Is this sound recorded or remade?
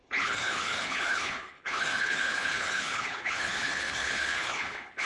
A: remade